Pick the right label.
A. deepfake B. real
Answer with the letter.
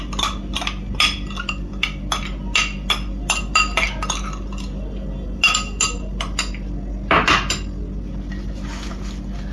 B